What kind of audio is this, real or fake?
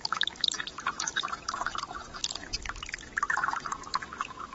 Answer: fake